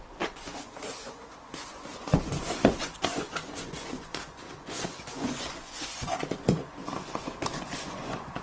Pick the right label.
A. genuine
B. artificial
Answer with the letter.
B